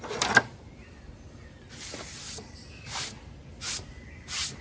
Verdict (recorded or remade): recorded